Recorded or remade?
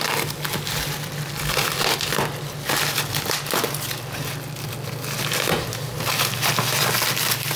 recorded